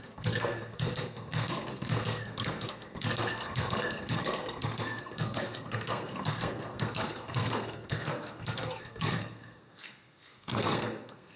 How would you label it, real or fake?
fake